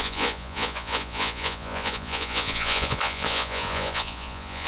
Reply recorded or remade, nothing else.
remade